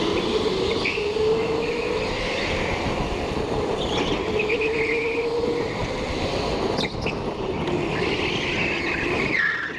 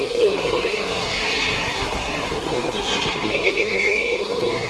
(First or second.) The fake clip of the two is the second